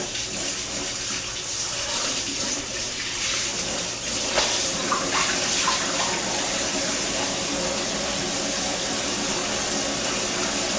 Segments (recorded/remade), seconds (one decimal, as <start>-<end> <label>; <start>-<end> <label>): 0.0-3.5 remade; 3.5-4.2 recorded; 4.2-7.4 remade; 7.4-8.2 recorded; 8.2-9.4 remade; 9.4-10.8 recorded